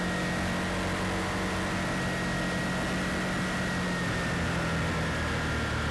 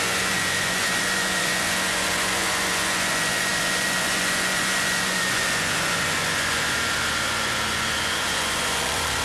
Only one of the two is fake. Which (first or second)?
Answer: second